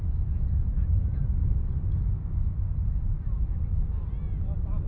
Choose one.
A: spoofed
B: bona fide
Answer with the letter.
B